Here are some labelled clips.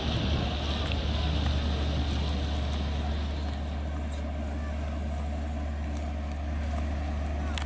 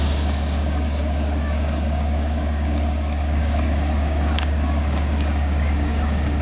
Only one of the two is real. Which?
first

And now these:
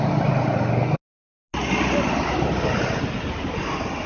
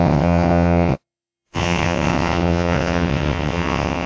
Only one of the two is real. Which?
first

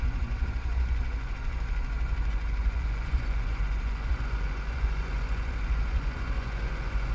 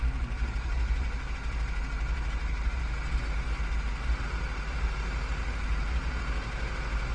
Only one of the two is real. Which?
second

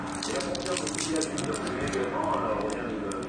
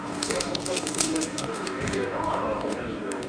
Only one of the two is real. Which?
first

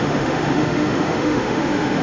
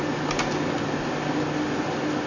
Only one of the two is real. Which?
second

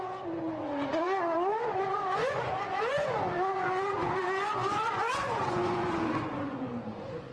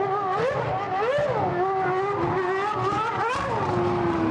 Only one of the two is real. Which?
second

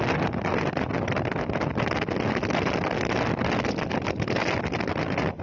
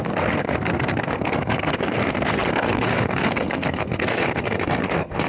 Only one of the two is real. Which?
first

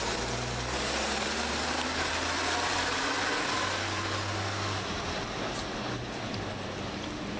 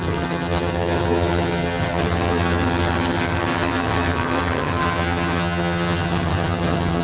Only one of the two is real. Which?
first